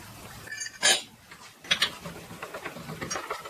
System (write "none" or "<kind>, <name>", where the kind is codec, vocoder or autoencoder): none